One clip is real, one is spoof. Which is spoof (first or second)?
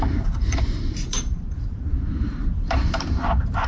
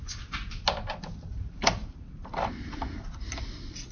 first